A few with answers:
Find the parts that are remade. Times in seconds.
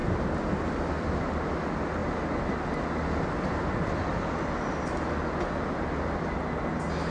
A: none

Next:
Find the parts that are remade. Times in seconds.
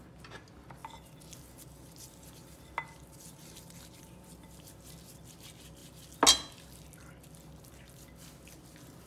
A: none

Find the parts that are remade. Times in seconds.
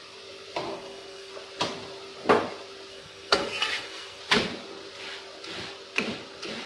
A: 0.7-1.3 (codec, SNAC); 2.9-4.2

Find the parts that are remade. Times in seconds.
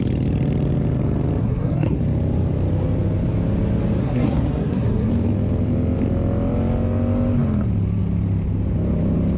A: 1.4-2.0 (codec, SNAC); 4.0-5.1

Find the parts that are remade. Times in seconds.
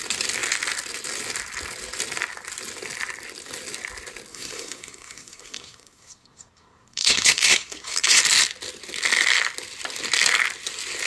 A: 4.3-8.2 (codec, SNAC)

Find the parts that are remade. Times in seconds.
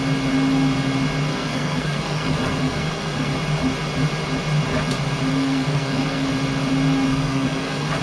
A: 1.3-3.3 (codec, SNAC); 5.3-6.3; 7.1-8.0